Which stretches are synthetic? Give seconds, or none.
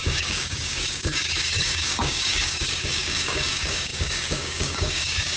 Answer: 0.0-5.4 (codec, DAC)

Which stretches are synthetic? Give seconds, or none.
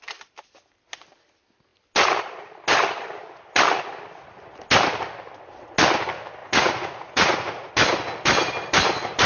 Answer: 6.4-7.7 (vocoder, Vocos)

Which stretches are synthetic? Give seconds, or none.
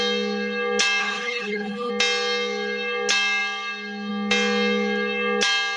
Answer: 1.0-1.9 (codec, HILCodec)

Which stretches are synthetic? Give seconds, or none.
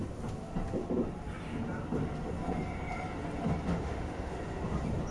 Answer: 3.7-4.3 (autoencoder, DAC-VAE)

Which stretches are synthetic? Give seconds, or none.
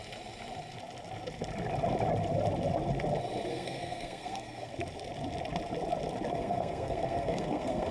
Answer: 3.5-4.7 (codec, SNAC); 6.3-7.9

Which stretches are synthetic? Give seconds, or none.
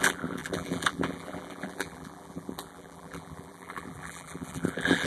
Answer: 0.0-5.1 (vocoder, BigVGAN v2)